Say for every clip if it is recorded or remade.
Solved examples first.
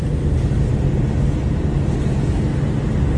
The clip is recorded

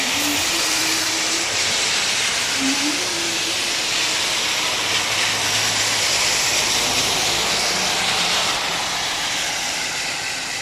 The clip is remade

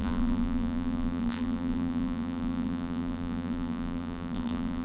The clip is remade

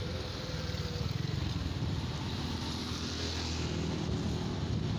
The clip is recorded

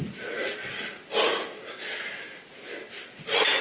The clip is recorded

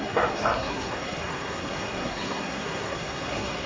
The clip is remade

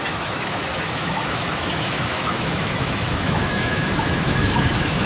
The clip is remade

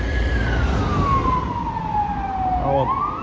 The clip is recorded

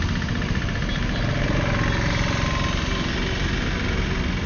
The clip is recorded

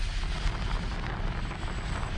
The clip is recorded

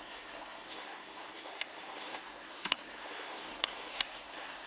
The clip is remade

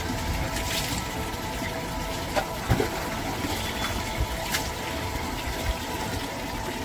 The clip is recorded